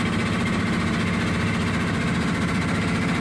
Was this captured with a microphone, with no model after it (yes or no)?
yes